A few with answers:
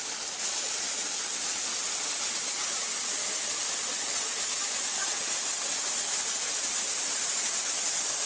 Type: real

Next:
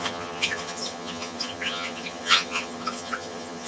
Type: fake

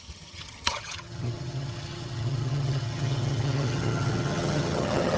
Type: fake